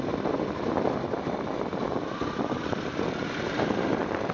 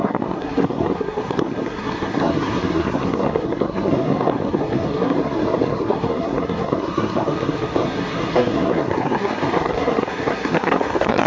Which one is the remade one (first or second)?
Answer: second